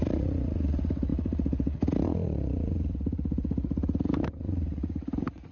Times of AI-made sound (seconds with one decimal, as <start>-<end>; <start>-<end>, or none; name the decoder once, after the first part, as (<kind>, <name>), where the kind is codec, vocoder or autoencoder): 0.0-5.5 (vocoder, Vocos)